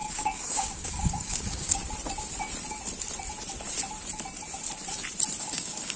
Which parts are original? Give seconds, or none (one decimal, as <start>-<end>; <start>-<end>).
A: 1.8-5.4